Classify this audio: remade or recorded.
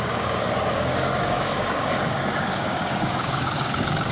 remade